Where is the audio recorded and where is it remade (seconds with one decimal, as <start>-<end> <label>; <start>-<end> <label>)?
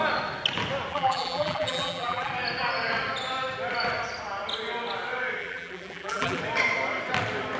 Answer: 0.0-0.9 recorded; 0.9-2.3 remade; 2.3-5.4 recorded; 5.4-6.4 remade; 6.4-7.6 recorded